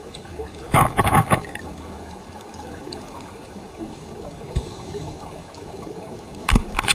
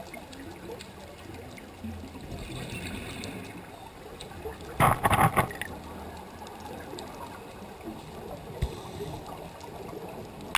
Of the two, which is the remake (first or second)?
first